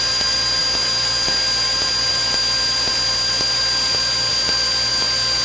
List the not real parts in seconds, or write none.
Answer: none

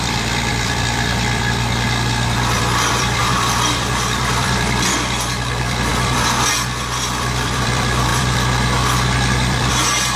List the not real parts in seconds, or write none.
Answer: 0.0-10.2 (vocoder, BigVGAN v2)

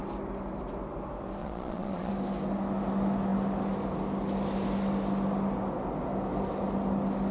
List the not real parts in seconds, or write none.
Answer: 1.4-2.1 (vocoder, Vocos)

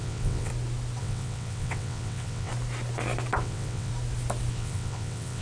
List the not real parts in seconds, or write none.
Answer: 0.0-0.5 (vocoder, WaveNeXt); 1.0-2.5; 3.4-3.9; 4.5-5.4